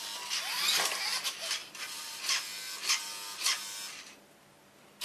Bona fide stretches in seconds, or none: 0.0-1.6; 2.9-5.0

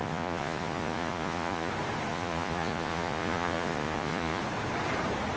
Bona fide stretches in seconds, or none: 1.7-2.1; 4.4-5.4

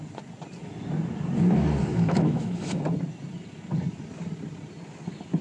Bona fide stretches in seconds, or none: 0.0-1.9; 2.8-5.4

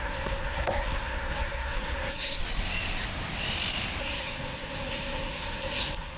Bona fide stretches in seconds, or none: 2.4-4.0